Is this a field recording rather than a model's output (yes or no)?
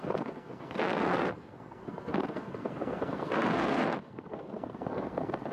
no